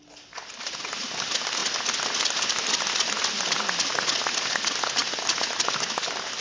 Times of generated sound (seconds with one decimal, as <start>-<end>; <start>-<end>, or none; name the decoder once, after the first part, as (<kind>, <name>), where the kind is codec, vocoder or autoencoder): none